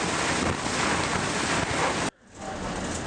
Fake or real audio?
real